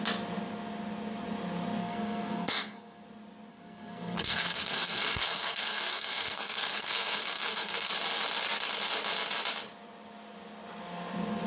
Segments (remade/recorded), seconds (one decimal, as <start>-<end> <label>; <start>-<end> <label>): 0.0-1.8 recorded; 1.8-3.0 remade; 3.0-3.5 recorded; 3.5-7.9 remade; 7.9-11.5 recorded